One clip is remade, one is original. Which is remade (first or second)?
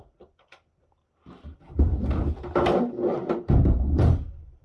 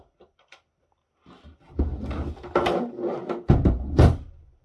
first